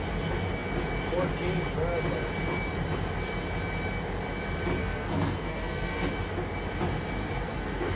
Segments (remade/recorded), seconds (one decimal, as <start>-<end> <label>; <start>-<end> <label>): 0.0-4.8 recorded; 4.8-6.1 remade; 6.1-7.2 recorded; 7.2-8.0 remade